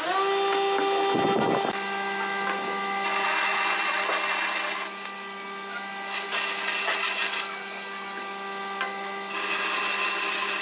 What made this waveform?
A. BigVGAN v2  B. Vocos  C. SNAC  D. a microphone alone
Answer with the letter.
D